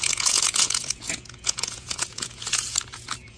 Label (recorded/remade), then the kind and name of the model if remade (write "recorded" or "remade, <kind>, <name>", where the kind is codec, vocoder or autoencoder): remade, vocoder, Vocos